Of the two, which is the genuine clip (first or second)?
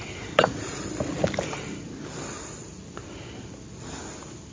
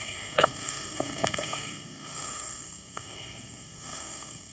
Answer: first